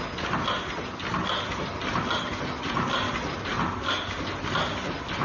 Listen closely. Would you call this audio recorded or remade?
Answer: recorded